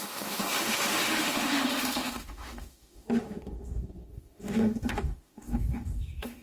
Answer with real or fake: fake